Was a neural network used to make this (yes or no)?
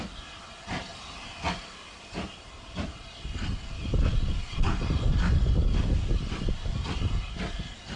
no